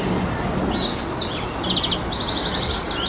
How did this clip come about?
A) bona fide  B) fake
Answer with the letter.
A